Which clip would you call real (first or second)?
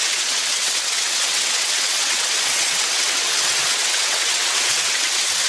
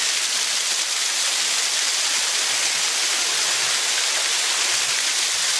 second